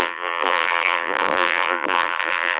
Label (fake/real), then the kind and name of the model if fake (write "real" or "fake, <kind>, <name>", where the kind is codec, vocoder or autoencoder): fake, vocoder, BigVGAN v2